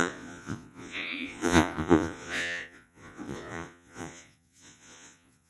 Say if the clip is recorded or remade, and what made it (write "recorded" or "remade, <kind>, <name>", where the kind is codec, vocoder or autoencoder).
remade, vocoder, Vocos